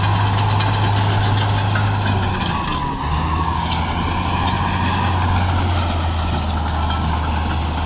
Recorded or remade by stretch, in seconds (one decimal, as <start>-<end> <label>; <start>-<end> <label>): 0.0-3.1 recorded; 3.1-3.8 remade; 3.8-7.9 recorded